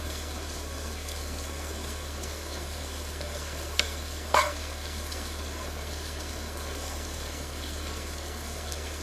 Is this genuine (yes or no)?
no